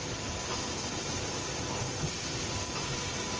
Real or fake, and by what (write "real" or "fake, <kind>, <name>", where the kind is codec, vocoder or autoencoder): real